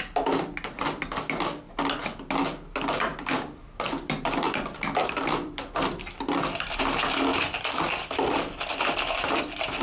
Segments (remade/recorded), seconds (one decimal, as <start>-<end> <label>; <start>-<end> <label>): 0.0-3.1 recorded; 3.1-6.8 remade; 6.8-7.3 recorded; 7.3-9.4 remade; 9.4-9.8 recorded